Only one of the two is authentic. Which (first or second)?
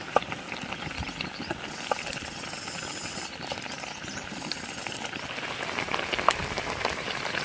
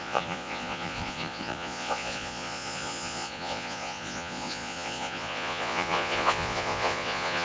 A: first